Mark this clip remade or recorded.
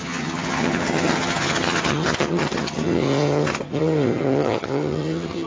remade